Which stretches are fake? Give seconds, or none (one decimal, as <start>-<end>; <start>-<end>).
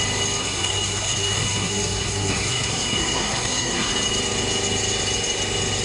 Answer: 0.4-3.9